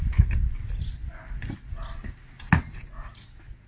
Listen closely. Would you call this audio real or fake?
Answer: real